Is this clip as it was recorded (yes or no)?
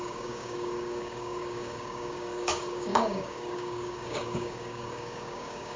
no